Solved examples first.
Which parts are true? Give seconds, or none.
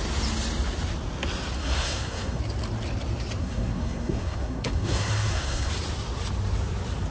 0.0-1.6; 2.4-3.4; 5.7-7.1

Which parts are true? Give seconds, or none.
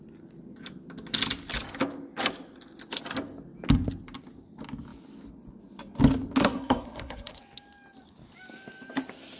0.0-6.4; 7.4-9.4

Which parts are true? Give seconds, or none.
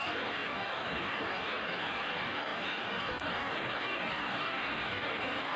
none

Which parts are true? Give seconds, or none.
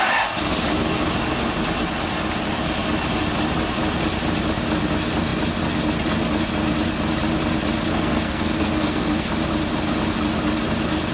0.0-7.9; 9.3-11.1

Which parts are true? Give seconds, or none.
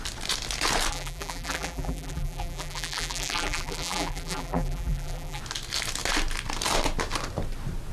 0.0-0.9; 5.4-7.9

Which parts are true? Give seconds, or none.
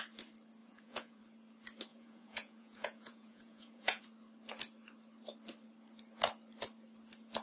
0.0-0.6; 1.2-1.9; 4.0-7.4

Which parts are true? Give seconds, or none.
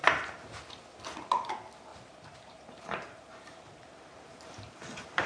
0.7-1.9